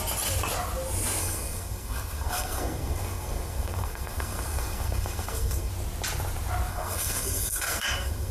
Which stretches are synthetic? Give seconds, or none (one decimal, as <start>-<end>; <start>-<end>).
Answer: 1.2-5.7; 6.7-8.3